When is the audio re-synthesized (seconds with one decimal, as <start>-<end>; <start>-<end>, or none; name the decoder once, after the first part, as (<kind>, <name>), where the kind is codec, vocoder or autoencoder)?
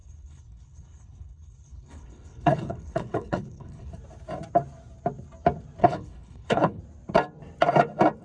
0.0-3.9 (codec, HILCodec); 5.8-6.8